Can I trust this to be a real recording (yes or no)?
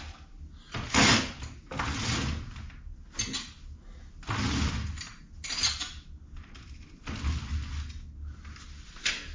yes